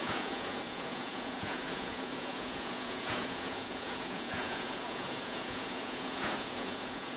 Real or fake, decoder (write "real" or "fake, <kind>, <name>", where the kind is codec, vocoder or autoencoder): fake, vocoder, Vocos